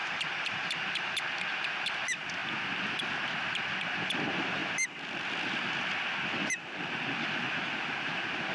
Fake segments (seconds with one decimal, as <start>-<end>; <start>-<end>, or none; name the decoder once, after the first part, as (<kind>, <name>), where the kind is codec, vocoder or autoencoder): 2.4-3.6 (vocoder, BigVGAN v2)